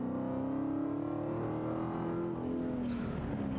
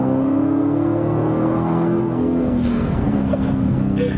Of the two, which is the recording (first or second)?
first